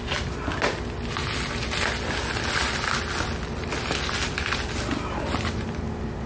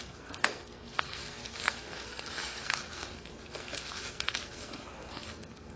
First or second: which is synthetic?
second